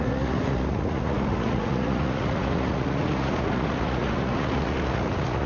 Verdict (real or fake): fake